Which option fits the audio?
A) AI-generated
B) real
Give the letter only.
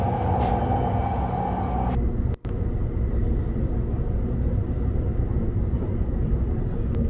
B